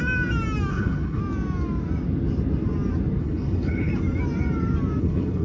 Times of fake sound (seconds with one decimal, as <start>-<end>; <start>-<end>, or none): 0.7-1.2; 3.2-3.9; 5.0-5.4